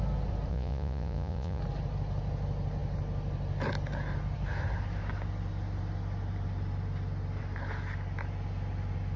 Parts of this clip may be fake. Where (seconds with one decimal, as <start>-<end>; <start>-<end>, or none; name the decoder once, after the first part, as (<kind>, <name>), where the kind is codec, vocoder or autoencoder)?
0.5-1.6 (vocoder, Vocos)